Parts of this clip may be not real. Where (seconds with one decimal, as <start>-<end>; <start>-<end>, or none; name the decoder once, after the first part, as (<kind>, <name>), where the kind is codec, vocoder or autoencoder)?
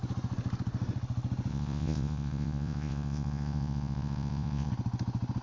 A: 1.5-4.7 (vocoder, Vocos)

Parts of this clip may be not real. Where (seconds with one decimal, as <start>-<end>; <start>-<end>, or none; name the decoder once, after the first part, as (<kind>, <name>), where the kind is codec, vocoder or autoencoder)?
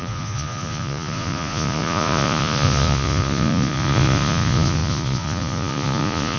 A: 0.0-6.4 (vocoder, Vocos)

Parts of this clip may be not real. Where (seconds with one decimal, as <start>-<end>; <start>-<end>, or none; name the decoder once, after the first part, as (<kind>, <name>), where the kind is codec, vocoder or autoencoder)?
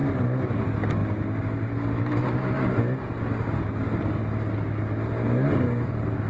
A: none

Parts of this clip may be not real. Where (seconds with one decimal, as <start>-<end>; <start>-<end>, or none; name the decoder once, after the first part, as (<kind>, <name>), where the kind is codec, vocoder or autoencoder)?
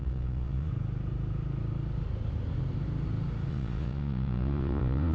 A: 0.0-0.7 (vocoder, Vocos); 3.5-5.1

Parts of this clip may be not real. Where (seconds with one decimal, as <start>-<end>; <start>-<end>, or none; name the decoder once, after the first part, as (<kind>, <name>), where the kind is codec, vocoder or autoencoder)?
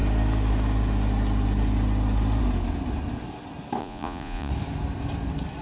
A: 3.8-4.5 (vocoder, Vocos)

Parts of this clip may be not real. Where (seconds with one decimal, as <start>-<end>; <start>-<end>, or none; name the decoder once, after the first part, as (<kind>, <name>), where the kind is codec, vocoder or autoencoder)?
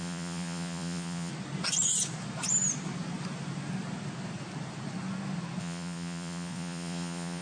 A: 0.0-1.3 (vocoder, Vocos); 5.6-7.4